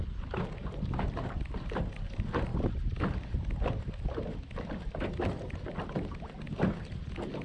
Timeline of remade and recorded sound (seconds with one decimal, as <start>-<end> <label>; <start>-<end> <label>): 0.0-7.4 recorded